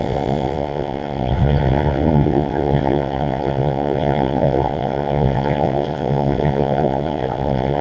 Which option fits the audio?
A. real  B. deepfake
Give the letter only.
B